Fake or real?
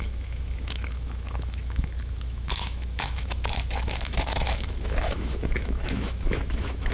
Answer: fake